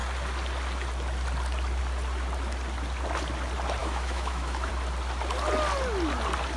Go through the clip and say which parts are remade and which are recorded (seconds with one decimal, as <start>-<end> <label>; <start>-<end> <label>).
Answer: 0.0-3.8 recorded; 3.8-4.7 remade; 4.7-6.6 recorded